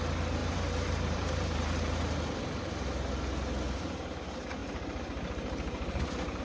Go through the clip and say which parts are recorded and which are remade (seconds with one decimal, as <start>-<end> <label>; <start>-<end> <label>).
0.0-0.4 recorded; 0.4-2.1 remade; 2.1-4.6 recorded; 4.6-6.4 remade